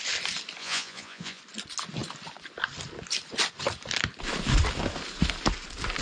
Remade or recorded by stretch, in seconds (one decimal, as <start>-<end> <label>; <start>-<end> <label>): 0.0-0.6 recorded; 0.6-1.4 remade; 1.4-6.0 recorded